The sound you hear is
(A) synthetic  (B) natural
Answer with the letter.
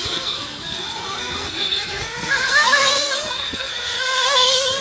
A